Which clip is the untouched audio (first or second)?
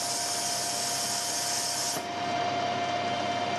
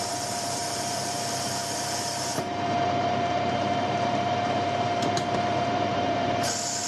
first